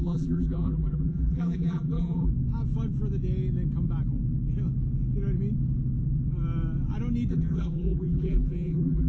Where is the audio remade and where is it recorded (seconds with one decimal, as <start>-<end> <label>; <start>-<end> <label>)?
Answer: 0.0-2.3 remade; 2.3-7.3 recorded; 7.3-9.1 remade